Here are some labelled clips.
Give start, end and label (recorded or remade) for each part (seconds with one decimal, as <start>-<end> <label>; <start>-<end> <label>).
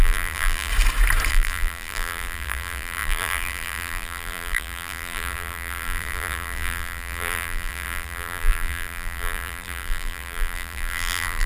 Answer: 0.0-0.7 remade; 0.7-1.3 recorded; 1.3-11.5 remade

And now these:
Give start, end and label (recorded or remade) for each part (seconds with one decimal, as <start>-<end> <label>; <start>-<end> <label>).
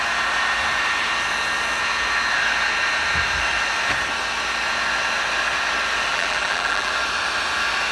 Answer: 0.0-6.1 recorded; 6.1-6.9 remade; 6.9-7.9 recorded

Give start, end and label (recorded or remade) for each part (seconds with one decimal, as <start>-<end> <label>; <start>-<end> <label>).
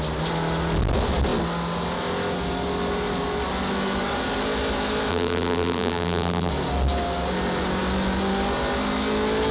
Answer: 0.0-5.1 recorded; 5.1-6.5 remade; 6.5-9.5 recorded